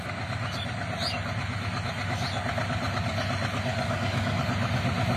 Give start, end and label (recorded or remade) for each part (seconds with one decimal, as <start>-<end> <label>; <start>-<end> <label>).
0.0-3.7 recorded; 3.7-4.4 remade; 4.4-5.2 recorded